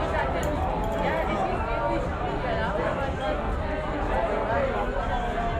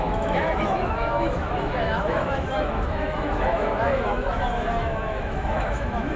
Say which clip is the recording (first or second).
first